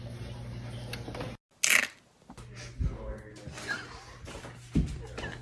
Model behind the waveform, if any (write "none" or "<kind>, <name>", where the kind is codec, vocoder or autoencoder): none